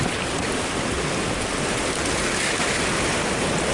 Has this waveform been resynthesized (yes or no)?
yes